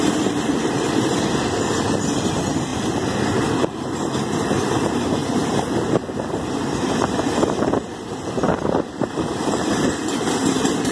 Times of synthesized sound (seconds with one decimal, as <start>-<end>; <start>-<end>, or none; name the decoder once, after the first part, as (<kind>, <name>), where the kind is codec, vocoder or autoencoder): 0.0-8.4 (vocoder, BigVGAN v2); 9.0-10.9